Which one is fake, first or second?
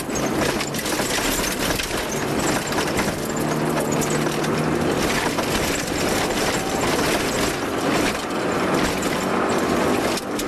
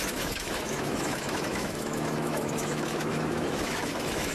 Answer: second